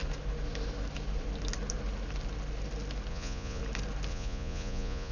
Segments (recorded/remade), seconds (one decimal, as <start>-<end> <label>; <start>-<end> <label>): 0.0-3.1 recorded; 3.1-3.6 remade; 3.6-4.1 recorded; 4.1-5.1 remade